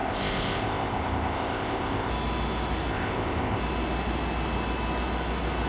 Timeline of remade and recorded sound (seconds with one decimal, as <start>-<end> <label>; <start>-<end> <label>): 0.0-2.1 remade; 2.1-2.9 recorded; 2.9-3.6 remade; 3.6-5.7 recorded